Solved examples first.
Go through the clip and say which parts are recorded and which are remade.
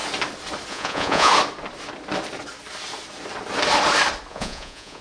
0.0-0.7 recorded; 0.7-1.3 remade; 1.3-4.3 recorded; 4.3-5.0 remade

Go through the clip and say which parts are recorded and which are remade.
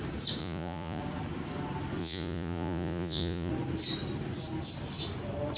0.0-0.4 recorded; 0.4-1.0 remade; 1.0-2.0 recorded; 2.0-3.5 remade; 3.5-5.6 recorded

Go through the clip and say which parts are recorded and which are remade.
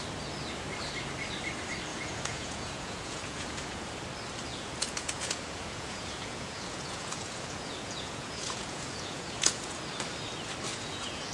0.0-1.9 recorded; 1.9-3.9 remade; 3.9-4.5 recorded; 4.5-9.8 remade; 9.8-10.7 recorded; 10.7-11.3 remade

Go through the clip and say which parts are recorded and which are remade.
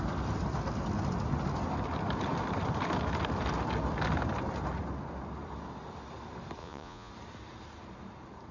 0.0-6.6 recorded; 6.6-7.1 remade; 7.1-8.5 recorded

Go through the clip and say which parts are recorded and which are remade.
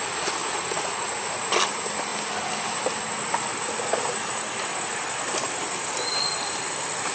0.0-0.4 recorded; 0.4-1.5 remade; 1.5-7.1 recorded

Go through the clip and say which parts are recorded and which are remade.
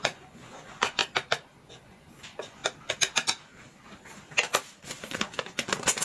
0.0-1.0 remade; 1.0-1.7 recorded; 1.7-2.6 remade; 2.6-4.8 recorded; 4.8-6.0 remade